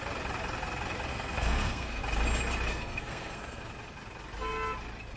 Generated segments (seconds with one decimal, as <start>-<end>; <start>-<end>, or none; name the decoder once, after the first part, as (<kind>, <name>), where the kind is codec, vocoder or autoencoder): 1.1-2.0 (codec, SNAC); 2.7-3.6